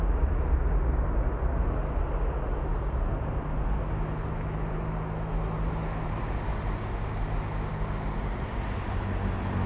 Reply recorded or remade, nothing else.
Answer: recorded